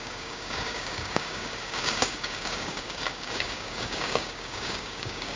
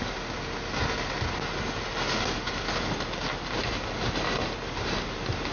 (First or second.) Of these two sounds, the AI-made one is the first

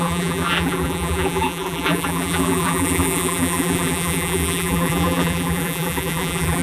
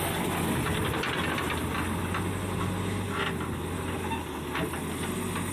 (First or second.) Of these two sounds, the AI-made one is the first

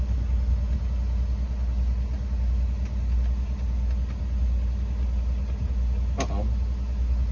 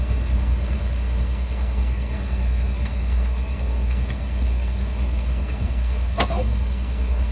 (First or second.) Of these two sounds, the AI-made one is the second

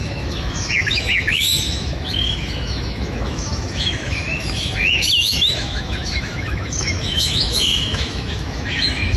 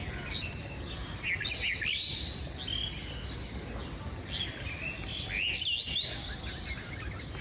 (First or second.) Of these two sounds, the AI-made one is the first